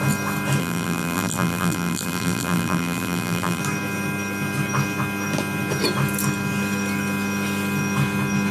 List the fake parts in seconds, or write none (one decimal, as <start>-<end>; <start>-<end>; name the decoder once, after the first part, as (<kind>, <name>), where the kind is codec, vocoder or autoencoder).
0.6-3.6 (vocoder, BigVGAN v2)